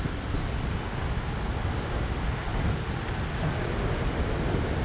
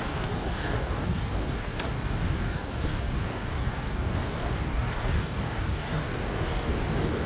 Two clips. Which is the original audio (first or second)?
first